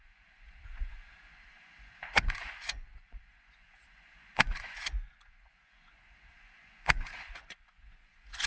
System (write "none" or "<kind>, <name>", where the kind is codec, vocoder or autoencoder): vocoder, Vocos